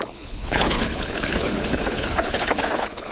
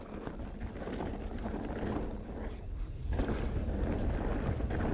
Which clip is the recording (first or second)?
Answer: second